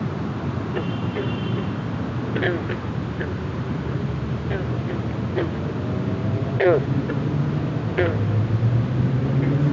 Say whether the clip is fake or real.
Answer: real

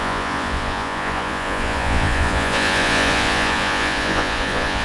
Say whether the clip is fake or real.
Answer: fake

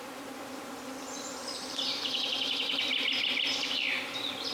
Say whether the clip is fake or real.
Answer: fake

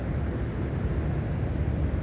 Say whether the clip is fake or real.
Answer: real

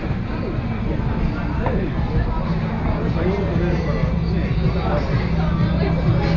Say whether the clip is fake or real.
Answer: real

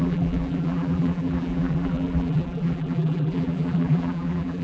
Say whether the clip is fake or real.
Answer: fake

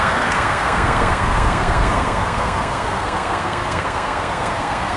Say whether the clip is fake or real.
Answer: fake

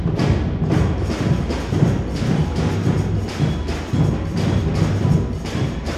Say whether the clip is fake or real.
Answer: real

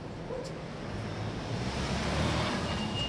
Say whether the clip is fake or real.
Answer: fake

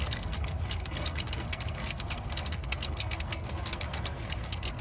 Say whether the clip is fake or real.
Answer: fake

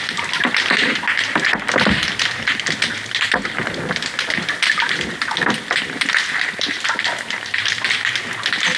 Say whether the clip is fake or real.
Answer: real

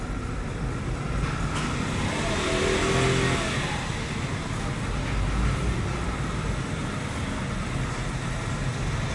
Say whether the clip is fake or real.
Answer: real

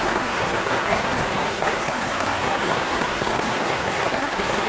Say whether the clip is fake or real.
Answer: fake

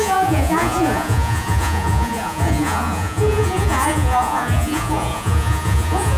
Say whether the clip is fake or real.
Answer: fake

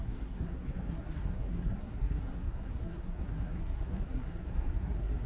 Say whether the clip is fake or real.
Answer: fake